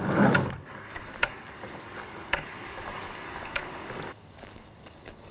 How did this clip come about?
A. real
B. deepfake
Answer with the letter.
B